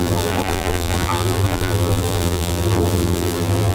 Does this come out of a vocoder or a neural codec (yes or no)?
yes